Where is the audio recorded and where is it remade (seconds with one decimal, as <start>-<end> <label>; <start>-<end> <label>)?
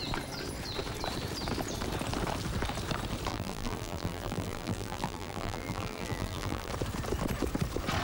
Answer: 0.0-3.3 recorded; 3.3-6.7 remade; 6.7-8.0 recorded